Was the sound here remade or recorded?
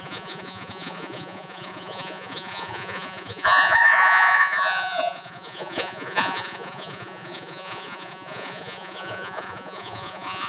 remade